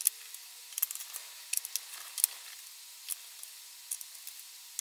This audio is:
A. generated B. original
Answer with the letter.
B